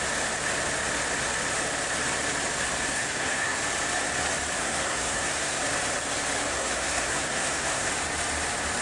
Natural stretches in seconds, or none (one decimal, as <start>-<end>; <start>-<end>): 0.0-2.9; 3.6-4.6; 5.6-6.5; 7.9-8.8